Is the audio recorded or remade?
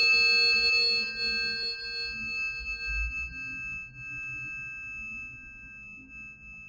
recorded